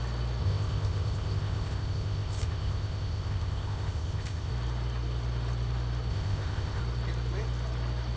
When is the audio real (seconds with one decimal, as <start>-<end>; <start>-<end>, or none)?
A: 0.0-0.4; 4.5-6.1; 6.8-8.2